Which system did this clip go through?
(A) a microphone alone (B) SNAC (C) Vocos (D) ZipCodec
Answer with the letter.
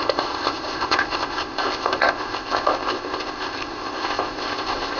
D